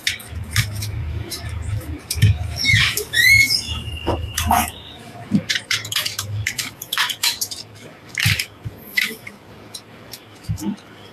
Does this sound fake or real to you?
fake